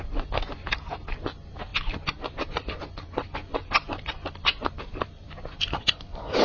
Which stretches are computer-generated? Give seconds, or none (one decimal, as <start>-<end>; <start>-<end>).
1.7-2.8; 3.4-6.4